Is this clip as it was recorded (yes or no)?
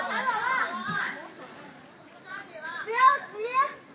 no